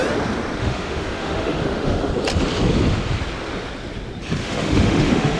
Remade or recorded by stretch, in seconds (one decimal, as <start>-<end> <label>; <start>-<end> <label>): 0.0-0.6 recorded; 0.6-2.1 remade; 2.1-4.4 recorded; 4.4-5.4 remade

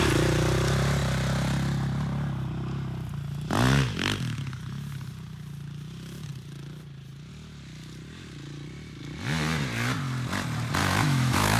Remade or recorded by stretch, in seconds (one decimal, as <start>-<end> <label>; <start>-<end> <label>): 0.0-10.8 recorded; 10.8-11.6 remade

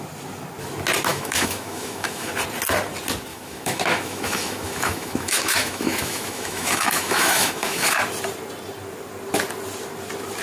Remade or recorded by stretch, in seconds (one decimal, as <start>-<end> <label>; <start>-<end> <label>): 0.0-1.1 recorded; 1.1-2.3 remade; 2.3-3.3 recorded; 3.3-8.0 remade; 8.0-10.4 recorded

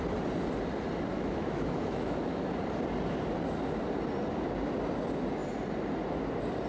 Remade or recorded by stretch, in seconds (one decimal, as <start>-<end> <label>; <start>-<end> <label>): 0.0-1.1 recorded; 1.1-2.5 remade; 2.5-6.7 recorded

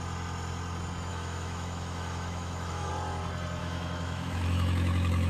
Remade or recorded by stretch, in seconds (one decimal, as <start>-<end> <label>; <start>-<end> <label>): 0.0-1.1 recorded; 1.1-2.9 remade; 2.9-3.6 recorded; 3.6-5.3 remade

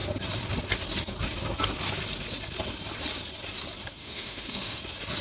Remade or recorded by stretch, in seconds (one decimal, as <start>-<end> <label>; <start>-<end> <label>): 0.0-4.0 recorded; 4.0-4.8 remade; 4.8-5.2 recorded